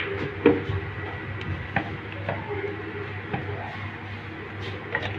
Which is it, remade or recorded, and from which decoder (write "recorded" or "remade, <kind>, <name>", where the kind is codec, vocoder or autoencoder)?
recorded